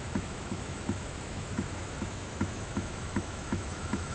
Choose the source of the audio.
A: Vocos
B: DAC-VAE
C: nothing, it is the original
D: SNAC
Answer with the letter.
B